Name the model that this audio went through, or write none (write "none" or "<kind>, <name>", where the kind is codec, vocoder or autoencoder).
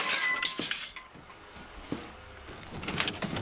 codec, DAC